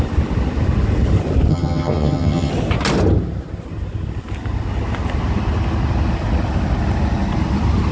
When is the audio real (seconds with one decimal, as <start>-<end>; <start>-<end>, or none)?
0.0-1.5; 2.5-7.9